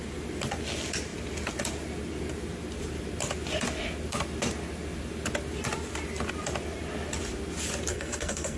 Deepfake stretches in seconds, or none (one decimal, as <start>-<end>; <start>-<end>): 7.9-8.6

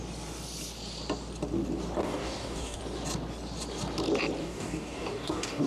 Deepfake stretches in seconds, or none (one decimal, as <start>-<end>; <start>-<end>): 2.0-2.8; 4.4-5.7